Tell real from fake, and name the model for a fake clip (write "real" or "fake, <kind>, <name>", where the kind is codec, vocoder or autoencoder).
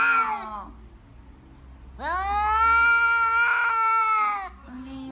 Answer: real